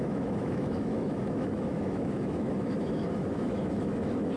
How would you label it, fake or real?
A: fake